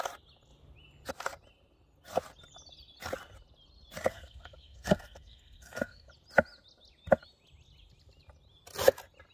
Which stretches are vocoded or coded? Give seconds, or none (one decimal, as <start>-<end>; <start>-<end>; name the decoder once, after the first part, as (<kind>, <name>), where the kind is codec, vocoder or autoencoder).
4.1-6.1 (codec, SNAC)

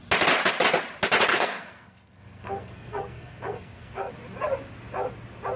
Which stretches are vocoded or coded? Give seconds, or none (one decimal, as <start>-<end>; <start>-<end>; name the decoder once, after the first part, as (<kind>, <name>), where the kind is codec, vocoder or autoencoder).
1.3-4.1 (codec, SNAC)

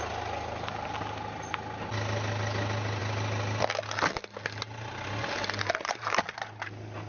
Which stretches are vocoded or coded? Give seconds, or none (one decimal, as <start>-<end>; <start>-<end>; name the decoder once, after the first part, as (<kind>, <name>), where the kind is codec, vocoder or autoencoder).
none

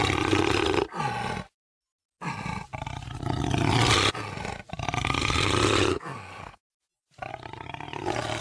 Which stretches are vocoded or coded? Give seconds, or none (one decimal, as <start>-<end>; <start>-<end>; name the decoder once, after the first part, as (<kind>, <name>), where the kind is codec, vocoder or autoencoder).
5.9-6.6 (codec, SNAC)

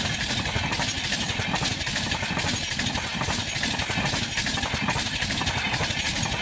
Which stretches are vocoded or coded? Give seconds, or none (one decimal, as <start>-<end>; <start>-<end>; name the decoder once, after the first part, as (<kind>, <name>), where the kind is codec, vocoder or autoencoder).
none